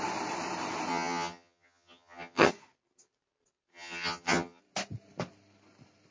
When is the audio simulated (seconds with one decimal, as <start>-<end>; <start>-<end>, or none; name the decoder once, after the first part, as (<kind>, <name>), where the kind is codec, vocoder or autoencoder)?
0.9-2.5 (vocoder, HiFi-GAN); 3.7-4.6